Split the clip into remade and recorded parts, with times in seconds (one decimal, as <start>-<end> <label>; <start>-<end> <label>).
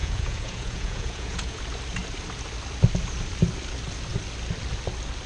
0.0-1.6 remade; 1.6-5.3 recorded